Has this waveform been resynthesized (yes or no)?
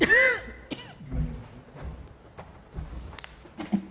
no